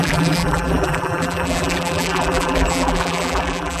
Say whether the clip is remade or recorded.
remade